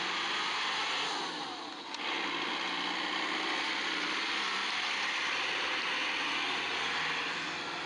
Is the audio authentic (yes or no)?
yes